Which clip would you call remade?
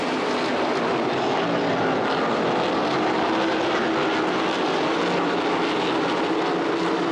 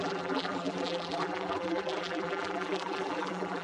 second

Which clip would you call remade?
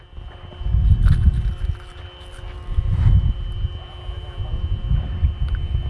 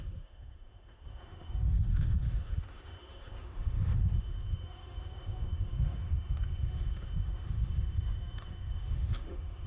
second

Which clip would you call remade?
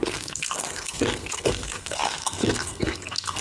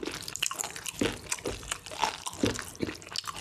first